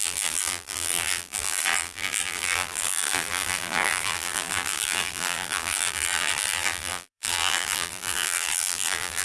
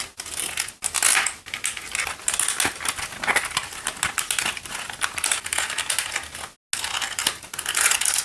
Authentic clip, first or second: second